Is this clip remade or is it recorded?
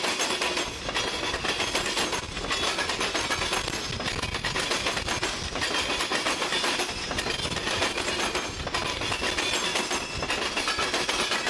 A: recorded